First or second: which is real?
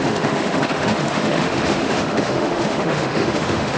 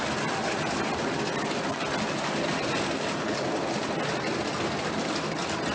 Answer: second